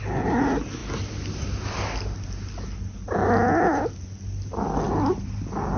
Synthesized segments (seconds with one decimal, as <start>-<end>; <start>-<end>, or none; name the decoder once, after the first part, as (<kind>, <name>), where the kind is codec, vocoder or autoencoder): none

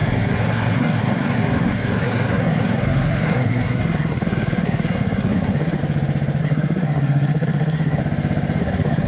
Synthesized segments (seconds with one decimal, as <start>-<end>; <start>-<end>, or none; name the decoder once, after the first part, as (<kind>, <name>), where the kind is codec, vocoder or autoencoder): 0.0-5.8 (codec, SNAC); 6.4-8.0; 8.6-9.1

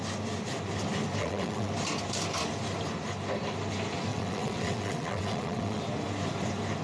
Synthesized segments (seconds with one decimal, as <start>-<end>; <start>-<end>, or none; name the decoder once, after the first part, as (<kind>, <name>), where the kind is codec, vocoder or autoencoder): 1.2-1.7 (vocoder, WaveNeXt); 4.1-5.8

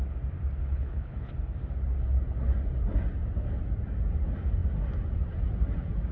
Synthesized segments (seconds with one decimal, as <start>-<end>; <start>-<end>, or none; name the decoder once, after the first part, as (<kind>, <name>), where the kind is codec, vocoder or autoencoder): 0.6-1.3 (codec, HILCodec)

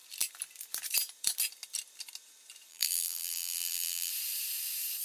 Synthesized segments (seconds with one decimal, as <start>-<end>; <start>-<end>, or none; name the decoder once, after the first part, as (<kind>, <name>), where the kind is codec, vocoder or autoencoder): 2.7-4.1 (vocoder, BigVGAN v2)

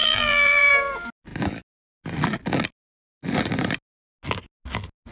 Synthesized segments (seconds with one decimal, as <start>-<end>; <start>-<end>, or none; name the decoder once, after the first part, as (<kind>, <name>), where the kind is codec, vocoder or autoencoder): 0.0-0.7 (vocoder, BigVGAN v2)

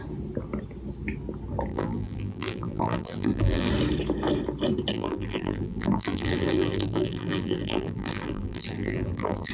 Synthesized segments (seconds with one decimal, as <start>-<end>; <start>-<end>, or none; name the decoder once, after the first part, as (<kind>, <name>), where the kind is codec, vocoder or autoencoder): 1.7-3.7 (vocoder, BigVGAN v2); 4.9-9.5